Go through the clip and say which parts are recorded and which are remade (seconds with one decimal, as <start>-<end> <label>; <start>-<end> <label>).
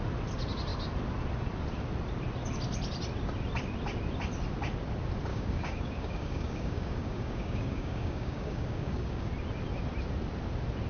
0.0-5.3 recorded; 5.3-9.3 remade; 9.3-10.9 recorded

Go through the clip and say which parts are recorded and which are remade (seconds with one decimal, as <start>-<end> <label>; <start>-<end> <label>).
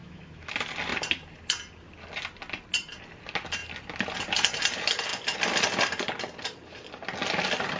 0.0-0.5 remade; 0.5-7.8 recorded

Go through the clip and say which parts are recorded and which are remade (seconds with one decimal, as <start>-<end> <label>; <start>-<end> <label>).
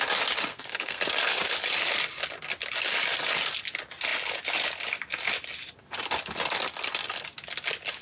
0.0-0.5 recorded; 0.5-1.0 remade; 1.0-8.0 recorded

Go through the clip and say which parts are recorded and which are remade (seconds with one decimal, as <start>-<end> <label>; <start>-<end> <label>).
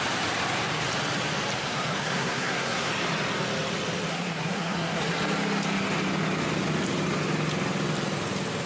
0.0-1.6 recorded; 1.6-2.9 remade; 2.9-4.1 recorded; 4.1-5.0 remade; 5.0-8.7 recorded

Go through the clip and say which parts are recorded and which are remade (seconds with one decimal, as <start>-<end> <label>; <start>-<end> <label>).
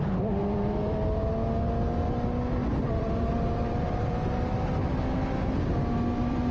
0.0-0.4 recorded; 0.4-1.3 remade; 1.3-2.6 recorded; 2.6-4.6 remade; 4.6-6.5 recorded